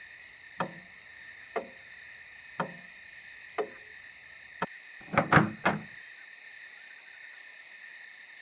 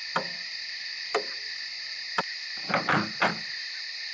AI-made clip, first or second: second